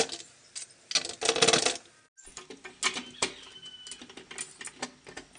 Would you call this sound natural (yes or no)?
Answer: yes